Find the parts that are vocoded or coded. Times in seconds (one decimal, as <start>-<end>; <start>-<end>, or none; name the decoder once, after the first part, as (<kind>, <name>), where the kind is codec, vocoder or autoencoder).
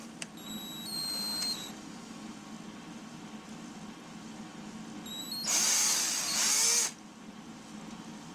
none